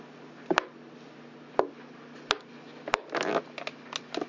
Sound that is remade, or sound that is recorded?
recorded